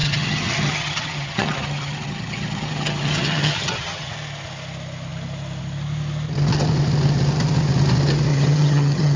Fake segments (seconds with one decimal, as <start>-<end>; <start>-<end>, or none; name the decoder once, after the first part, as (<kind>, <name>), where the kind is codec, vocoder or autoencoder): 0.0-4.1 (vocoder, HiFi-GAN); 8.3-9.2